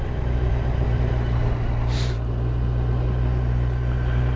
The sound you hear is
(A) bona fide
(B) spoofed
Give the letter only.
A